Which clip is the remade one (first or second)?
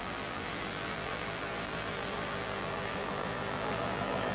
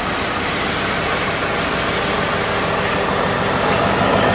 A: first